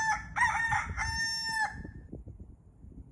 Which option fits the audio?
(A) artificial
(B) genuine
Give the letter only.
B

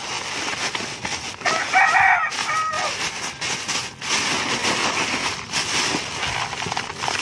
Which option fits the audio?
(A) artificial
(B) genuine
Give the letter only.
B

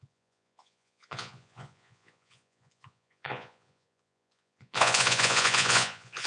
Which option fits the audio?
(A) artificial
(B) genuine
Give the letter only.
A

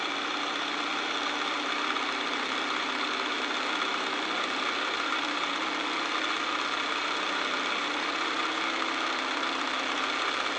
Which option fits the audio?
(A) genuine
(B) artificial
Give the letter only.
A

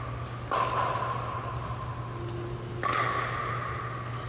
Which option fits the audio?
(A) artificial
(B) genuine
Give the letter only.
B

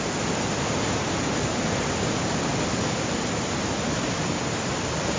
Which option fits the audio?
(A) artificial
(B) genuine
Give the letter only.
B